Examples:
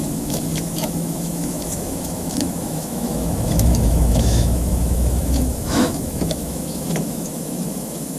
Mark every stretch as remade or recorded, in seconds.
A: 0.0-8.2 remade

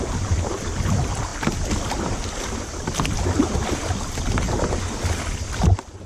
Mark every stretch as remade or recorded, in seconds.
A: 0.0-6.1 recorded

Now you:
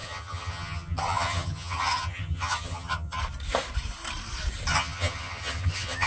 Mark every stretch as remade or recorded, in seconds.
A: 0.0-3.2 remade; 3.2-4.7 recorded; 4.7-6.1 remade

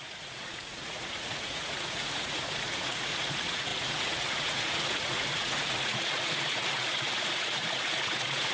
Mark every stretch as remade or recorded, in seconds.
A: 0.0-8.5 remade

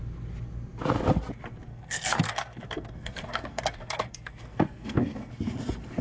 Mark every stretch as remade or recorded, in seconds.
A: 0.0-1.7 recorded; 1.7-5.3 remade; 5.3-6.0 recorded

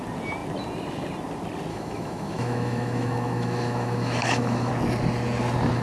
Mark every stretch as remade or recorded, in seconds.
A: 0.0-1.7 recorded; 1.7-4.7 remade; 4.7-5.8 recorded

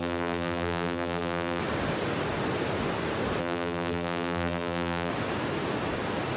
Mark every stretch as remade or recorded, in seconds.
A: 0.0-1.6 remade; 1.6-3.4 recorded; 3.4-5.1 remade; 5.1-6.4 recorded